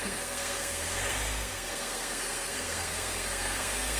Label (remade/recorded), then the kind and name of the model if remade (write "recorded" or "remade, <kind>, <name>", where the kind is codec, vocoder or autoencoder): remade, codec, SNAC